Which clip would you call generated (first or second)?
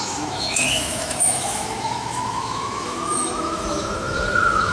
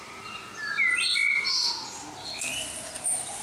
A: first